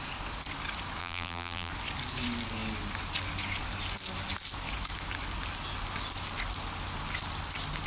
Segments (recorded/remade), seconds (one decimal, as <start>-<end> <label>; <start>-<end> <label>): 0.0-1.0 recorded; 1.0-1.7 remade; 1.7-7.9 recorded